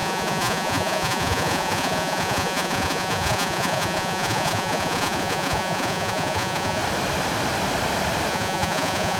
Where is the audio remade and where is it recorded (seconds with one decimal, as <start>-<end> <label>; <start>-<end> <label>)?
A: 0.0-6.8 remade; 6.8-8.3 recorded; 8.3-9.2 remade